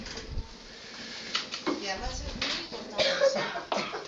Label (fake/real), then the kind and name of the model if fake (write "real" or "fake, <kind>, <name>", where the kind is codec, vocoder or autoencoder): real